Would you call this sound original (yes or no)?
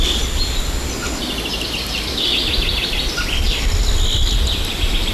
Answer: yes